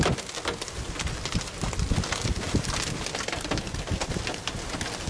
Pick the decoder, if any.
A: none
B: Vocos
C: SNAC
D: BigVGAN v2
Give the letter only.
A